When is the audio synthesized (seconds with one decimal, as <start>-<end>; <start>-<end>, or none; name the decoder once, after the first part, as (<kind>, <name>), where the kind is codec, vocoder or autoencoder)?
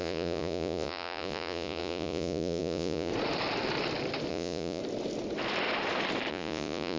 0.0-3.1 (vocoder, Vocos); 4.3-4.8; 6.3-7.0